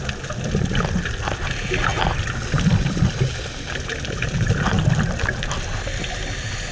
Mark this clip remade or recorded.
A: recorded